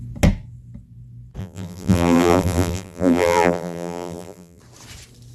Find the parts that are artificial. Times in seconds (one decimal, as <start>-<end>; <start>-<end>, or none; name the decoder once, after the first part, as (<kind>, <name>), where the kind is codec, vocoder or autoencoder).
1.4-4.6 (vocoder, BigVGAN v2)